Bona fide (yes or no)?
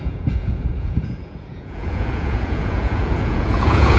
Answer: no